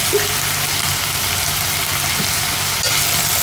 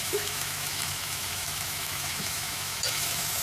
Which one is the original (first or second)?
first